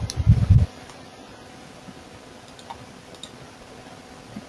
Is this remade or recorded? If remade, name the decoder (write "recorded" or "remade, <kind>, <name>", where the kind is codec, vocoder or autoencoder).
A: recorded